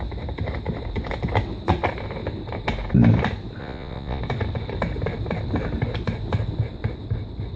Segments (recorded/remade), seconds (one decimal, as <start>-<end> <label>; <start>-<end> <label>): 0.0-3.6 recorded; 3.6-4.2 remade; 4.2-7.6 recorded